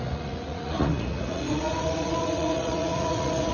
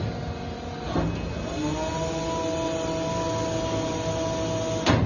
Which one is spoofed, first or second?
first